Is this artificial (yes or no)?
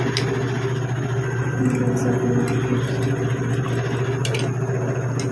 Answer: no